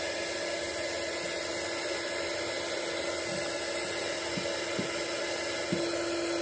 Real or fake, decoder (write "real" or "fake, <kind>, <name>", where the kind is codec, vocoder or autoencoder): real